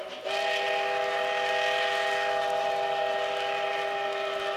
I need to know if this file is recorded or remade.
recorded